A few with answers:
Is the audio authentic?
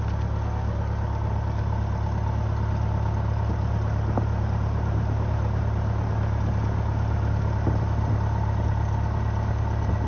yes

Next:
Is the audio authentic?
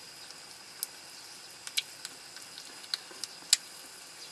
yes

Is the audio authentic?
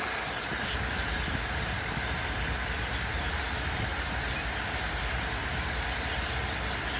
yes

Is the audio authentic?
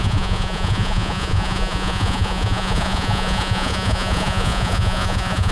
no